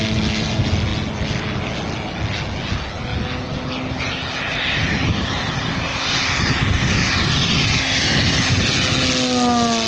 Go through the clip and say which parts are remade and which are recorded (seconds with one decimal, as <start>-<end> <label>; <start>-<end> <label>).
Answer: 0.0-9.9 recorded